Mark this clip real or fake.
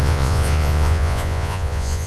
fake